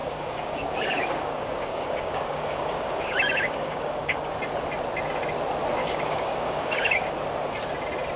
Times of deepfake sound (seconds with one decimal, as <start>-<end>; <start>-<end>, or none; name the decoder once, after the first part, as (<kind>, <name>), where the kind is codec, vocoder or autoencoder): 0.0-4.2 (codec, DAC); 5.8-7.1